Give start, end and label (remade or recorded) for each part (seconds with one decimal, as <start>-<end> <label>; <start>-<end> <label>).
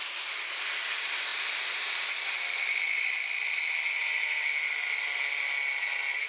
0.0-6.3 recorded